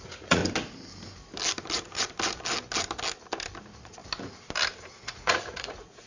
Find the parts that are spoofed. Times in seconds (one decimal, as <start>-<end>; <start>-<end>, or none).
0.0-0.4; 3.6-4.0; 4.8-6.1